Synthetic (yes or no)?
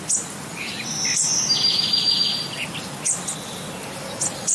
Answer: no